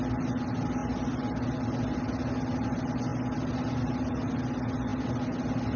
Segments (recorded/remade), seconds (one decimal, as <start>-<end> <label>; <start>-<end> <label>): 0.0-5.8 recorded